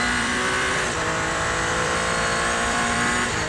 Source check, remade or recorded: remade